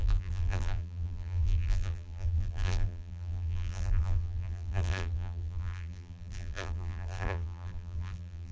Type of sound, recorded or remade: remade